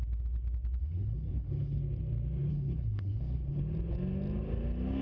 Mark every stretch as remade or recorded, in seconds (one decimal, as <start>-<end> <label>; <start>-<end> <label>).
0.0-0.8 recorded; 0.8-1.8 remade; 1.8-2.5 recorded; 2.5-3.6 remade; 3.6-5.0 recorded